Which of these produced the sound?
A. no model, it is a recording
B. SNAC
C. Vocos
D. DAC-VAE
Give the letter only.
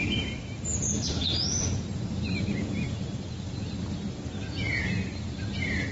A